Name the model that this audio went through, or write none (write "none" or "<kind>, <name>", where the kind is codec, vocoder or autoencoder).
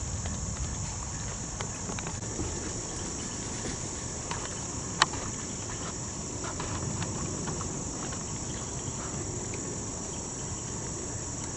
vocoder, BigVGAN v2